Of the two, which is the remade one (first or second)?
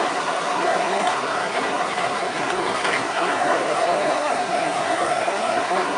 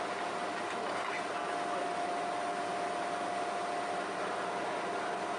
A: first